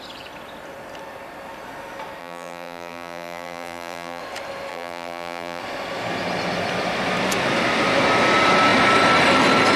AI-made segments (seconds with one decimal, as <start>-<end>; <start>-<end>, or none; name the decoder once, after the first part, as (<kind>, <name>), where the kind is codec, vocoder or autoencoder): 2.2-4.2 (vocoder, BigVGAN v2); 4.7-5.6